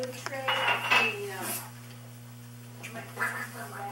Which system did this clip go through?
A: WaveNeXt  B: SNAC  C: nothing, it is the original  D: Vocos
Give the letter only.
C